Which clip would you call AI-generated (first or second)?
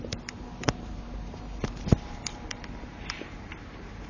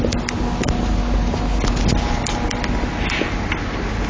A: first